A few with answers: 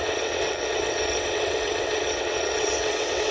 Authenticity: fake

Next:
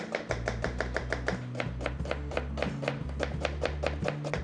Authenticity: real